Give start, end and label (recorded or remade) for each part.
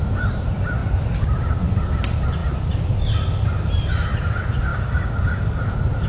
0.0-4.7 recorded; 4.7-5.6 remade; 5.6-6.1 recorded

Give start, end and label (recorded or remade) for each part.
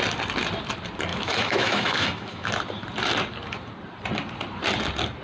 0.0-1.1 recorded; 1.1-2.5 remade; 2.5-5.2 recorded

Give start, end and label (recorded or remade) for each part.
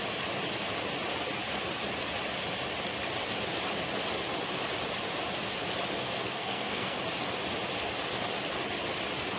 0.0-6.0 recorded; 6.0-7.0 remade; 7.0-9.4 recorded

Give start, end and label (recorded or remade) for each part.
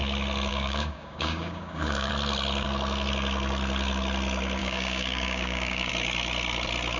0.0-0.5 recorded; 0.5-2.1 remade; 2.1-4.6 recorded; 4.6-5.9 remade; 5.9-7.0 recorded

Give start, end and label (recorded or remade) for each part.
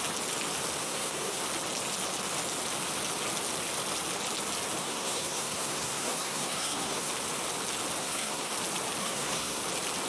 0.0-0.8 recorded; 0.8-1.4 remade; 1.4-4.8 recorded; 4.8-7.1 remade; 7.1-8.0 recorded; 8.0-8.5 remade; 8.5-9.0 recorded; 9.0-9.6 remade; 9.6-10.1 recorded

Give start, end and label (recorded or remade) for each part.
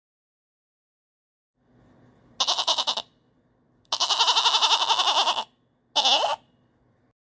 0.0-7.3 recorded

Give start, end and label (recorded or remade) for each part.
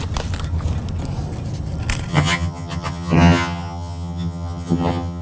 0.0-2.1 recorded; 2.1-5.2 remade